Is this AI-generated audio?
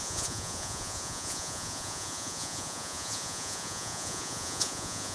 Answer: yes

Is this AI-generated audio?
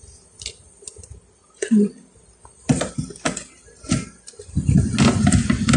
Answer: no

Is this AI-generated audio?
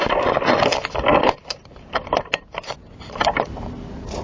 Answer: no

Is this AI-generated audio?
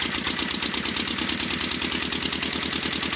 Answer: no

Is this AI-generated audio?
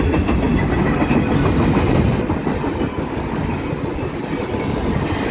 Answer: no